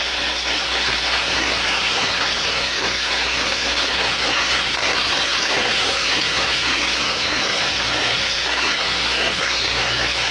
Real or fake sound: fake